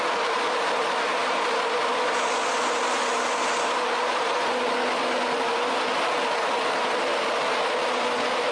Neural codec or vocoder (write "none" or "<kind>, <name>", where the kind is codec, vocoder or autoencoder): none